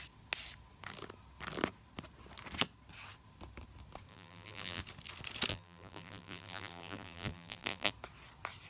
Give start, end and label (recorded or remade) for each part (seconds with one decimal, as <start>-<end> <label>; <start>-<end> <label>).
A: 0.0-4.1 recorded; 4.1-4.8 remade; 4.8-5.5 recorded; 5.5-7.9 remade; 7.9-8.7 recorded